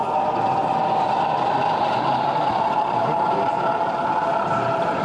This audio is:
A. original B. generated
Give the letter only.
A